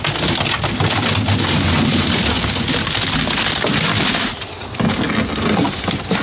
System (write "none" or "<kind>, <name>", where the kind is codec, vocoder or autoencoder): none